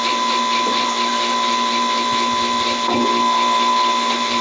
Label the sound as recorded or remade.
recorded